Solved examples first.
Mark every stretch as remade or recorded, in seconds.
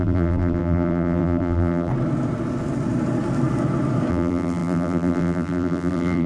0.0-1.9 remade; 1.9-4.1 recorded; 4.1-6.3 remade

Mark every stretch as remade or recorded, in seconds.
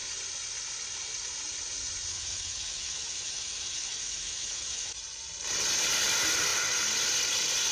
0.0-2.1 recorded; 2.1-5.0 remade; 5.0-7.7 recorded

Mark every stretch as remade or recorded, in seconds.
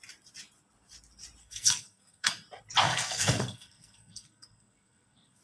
0.0-1.4 recorded; 1.4-2.3 remade; 2.3-2.8 recorded; 2.8-5.4 remade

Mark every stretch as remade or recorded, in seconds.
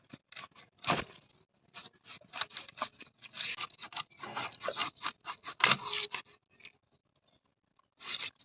0.0-8.4 recorded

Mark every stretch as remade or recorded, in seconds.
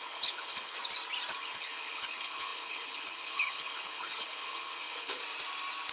0.0-0.8 remade; 0.8-1.4 recorded; 1.4-5.2 remade; 5.2-5.9 recorded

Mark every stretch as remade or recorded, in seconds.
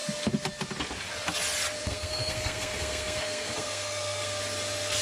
0.0-1.8 recorded; 1.8-4.4 remade; 4.4-5.0 recorded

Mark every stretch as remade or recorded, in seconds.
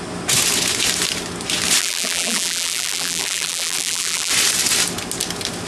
0.0-1.8 recorded; 1.8-4.3 remade; 4.3-5.7 recorded